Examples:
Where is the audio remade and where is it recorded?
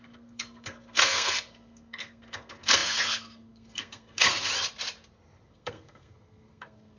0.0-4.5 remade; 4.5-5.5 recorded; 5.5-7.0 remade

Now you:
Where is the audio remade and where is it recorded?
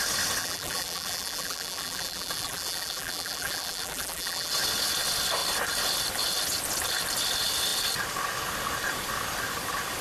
0.0-0.4 recorded; 0.4-4.5 remade; 4.5-10.0 recorded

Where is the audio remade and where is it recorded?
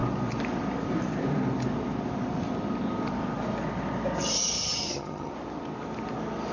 0.0-4.6 recorded; 4.6-5.3 remade; 5.3-6.5 recorded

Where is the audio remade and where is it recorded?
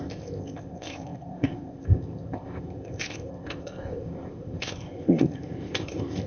0.0-6.3 remade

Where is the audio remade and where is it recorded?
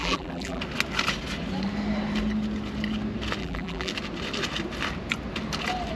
0.0-0.6 remade; 0.6-3.4 recorded; 3.4-3.9 remade; 3.9-5.9 recorded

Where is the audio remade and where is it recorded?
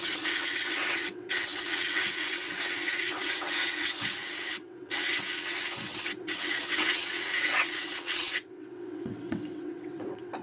0.0-10.4 remade